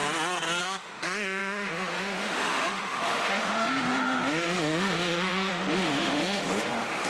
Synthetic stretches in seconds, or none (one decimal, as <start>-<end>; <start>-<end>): 0.6-7.1